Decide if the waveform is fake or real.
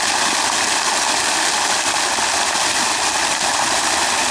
real